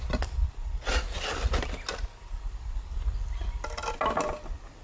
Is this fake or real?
real